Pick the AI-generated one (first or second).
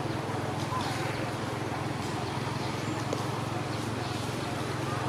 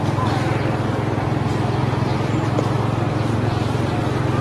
first